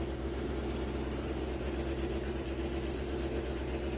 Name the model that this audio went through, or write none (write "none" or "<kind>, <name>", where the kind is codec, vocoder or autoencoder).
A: none